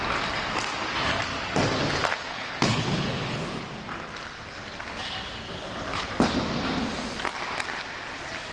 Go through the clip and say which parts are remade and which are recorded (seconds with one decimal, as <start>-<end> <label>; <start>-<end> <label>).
0.0-2.3 recorded; 2.3-3.6 remade; 3.6-5.4 recorded; 5.4-6.1 remade; 6.1-8.5 recorded